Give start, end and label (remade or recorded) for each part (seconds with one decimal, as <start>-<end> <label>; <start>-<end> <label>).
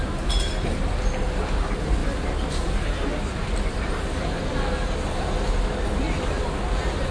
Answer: 0.0-7.1 recorded